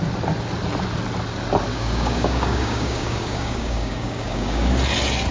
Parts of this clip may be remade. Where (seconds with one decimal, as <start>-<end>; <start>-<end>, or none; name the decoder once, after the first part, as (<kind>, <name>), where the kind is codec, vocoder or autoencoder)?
1.7-4.7 (codec, DAC)